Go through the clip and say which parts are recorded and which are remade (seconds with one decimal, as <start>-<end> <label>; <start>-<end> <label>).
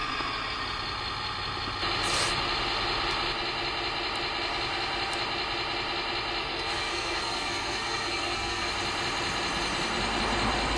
0.0-6.4 recorded; 6.4-8.7 remade; 8.7-10.8 recorded